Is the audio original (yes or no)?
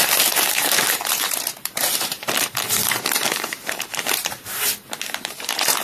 no